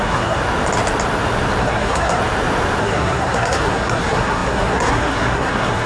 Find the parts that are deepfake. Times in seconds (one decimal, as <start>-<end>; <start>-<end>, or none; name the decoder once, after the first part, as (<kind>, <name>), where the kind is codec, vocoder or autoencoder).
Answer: 0.0-0.4 (codec, SNAC); 1.6-2.2; 2.8-5.9